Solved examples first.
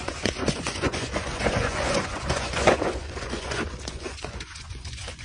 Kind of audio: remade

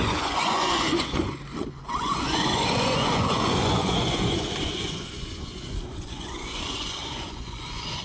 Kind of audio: remade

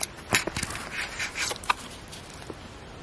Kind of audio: recorded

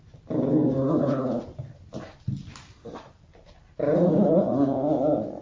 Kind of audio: recorded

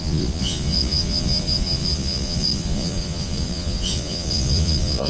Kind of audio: remade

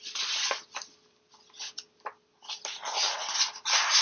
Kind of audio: recorded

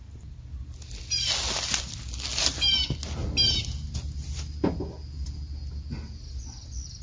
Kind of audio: recorded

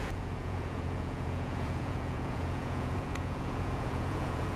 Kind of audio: remade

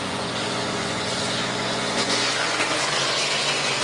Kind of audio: remade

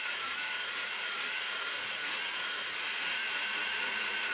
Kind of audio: remade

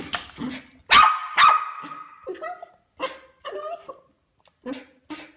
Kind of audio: recorded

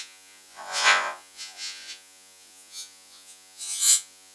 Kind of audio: remade